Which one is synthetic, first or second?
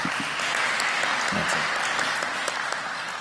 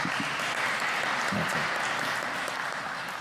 second